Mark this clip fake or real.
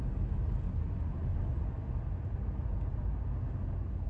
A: real